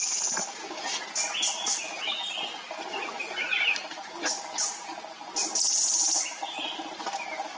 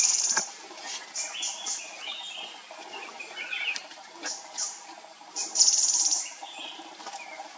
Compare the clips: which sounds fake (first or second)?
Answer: second